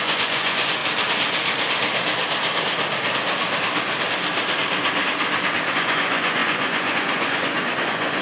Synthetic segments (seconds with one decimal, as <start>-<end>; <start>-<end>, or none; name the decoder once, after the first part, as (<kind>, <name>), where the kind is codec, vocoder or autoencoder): 0.0-0.8 (vocoder, Vocos); 5.7-8.2